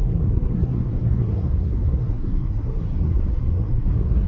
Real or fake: fake